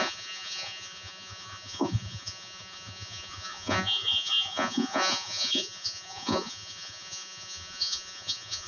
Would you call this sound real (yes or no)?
no